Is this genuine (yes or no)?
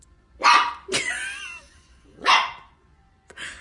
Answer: no